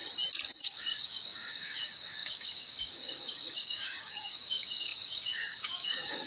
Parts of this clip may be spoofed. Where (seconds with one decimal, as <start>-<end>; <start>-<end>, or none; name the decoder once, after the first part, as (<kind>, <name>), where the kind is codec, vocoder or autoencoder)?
0.6-6.3 (codec, DAC)